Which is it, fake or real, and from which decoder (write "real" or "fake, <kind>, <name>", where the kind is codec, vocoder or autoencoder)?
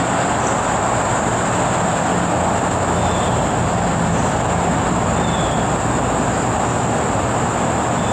real